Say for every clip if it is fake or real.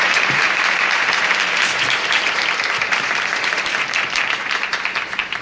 fake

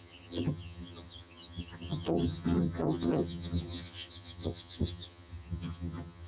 fake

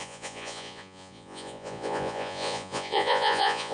fake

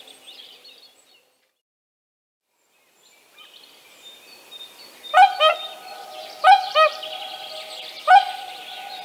real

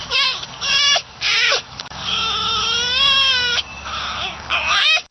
fake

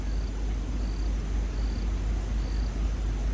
real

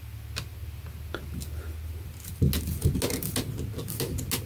real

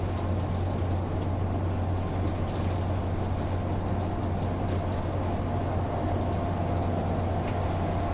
real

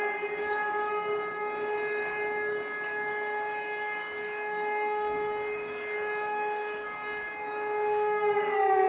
fake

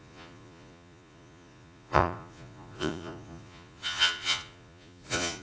fake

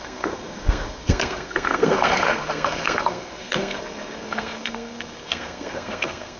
fake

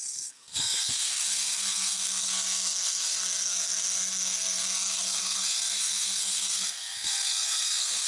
fake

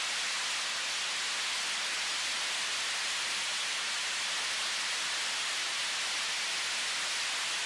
real